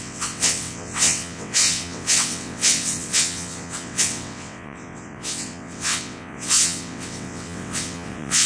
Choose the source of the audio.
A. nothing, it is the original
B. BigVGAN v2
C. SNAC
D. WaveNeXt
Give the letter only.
D